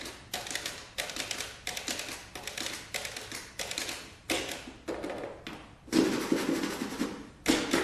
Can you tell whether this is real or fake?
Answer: real